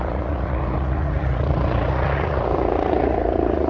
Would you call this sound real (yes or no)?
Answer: no